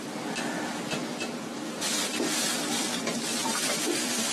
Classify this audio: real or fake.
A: real